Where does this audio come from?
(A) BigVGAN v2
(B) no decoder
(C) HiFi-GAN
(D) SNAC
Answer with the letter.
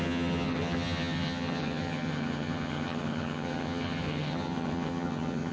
C